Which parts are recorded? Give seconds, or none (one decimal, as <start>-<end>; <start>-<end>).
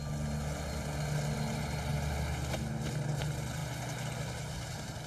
0.0-5.1